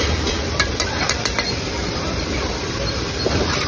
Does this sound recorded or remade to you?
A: remade